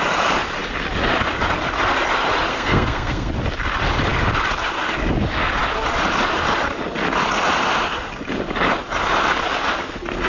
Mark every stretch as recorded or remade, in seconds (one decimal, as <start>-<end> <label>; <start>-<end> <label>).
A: 0.0-2.5 recorded; 2.5-3.3 remade; 3.3-10.3 recorded

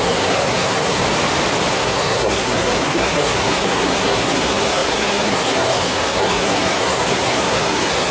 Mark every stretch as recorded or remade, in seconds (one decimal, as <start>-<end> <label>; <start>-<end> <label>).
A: 0.0-1.0 remade; 1.0-1.7 recorded; 1.7-8.1 remade

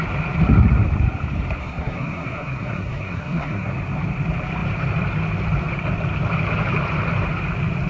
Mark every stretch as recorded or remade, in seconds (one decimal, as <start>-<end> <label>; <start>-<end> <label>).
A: 0.0-1.6 recorded; 1.6-3.7 remade; 3.7-7.9 recorded